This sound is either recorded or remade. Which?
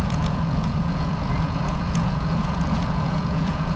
remade